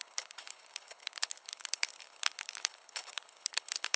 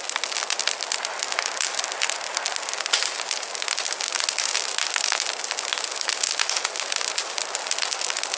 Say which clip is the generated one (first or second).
first